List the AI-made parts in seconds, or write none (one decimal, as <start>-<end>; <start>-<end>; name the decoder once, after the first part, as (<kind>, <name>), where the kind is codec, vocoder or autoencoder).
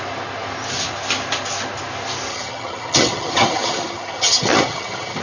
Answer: 2.3-5.2 (vocoder, HiFi-GAN)